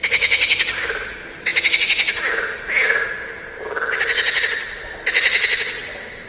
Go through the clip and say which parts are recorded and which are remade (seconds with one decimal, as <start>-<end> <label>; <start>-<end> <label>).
0.0-6.3 recorded